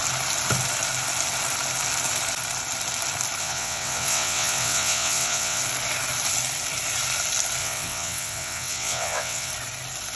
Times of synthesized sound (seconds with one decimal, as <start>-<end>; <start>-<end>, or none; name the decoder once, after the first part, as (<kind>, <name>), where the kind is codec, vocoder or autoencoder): 3.4-5.6 (vocoder, WaveNeXt); 7.6-9.5